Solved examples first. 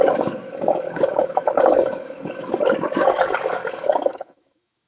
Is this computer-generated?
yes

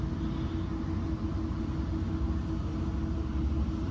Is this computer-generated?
no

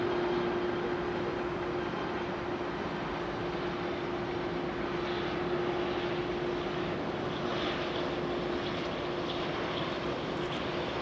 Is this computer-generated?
no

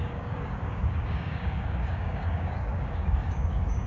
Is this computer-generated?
yes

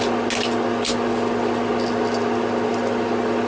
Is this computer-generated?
no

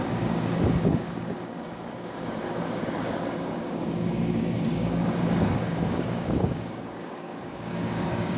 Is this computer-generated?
yes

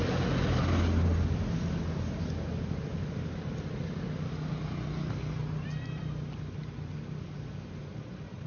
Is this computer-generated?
no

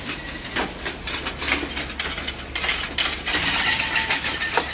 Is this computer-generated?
no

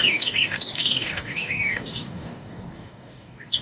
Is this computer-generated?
yes